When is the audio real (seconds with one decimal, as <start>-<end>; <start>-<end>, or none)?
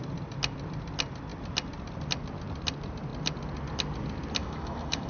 0.0-4.4